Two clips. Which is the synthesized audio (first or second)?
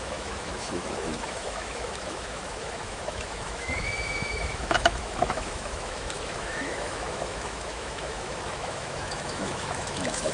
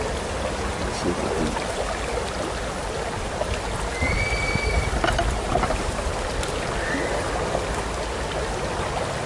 first